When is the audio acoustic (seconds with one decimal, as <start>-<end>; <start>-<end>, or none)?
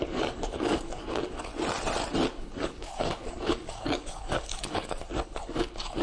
1.5-2.3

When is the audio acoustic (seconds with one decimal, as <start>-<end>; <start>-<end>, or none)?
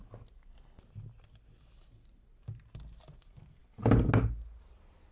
0.0-5.1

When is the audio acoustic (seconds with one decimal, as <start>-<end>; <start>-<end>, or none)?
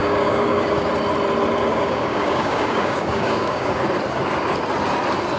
0.9-1.7; 3.8-5.4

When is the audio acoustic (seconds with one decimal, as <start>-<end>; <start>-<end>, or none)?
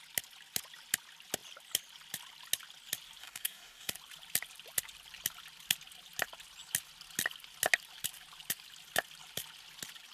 0.0-3.2; 3.9-10.1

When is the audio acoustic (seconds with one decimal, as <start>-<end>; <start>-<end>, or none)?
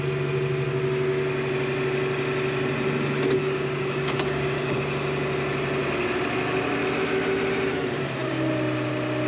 0.0-3.4; 4.7-9.3